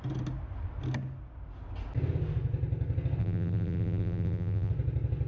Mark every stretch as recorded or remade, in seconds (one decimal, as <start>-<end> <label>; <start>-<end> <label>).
0.0-3.2 recorded; 3.2-4.7 remade; 4.7-5.3 recorded